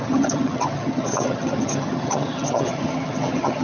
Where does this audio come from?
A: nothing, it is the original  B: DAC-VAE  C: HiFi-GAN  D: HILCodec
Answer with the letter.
C